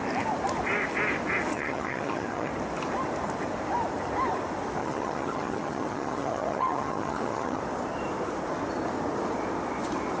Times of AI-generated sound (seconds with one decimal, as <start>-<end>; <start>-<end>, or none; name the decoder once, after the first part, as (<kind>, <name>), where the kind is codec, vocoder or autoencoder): 1.5-2.5 (vocoder, HiFi-GAN); 4.8-7.6